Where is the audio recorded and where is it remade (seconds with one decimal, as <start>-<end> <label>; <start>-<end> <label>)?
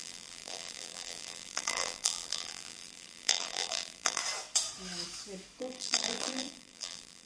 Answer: 0.0-4.2 remade; 4.2-5.6 recorded; 5.6-7.3 remade